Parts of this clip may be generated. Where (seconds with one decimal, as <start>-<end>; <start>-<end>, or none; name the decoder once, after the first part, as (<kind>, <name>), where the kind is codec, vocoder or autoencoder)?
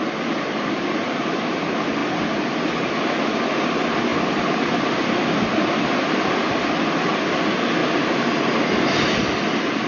none